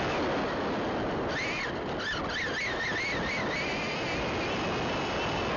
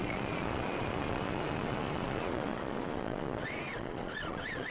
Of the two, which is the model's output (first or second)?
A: second